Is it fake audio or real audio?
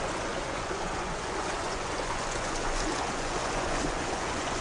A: fake